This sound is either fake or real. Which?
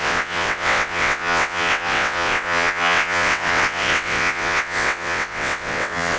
fake